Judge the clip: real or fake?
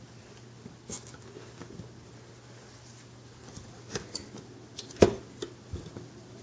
real